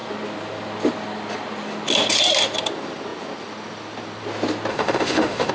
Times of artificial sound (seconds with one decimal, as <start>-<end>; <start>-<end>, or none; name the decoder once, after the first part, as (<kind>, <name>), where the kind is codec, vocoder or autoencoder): 4.7-5.5 (autoencoder, DAC-VAE)